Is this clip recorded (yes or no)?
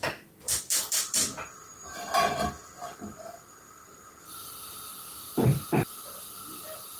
no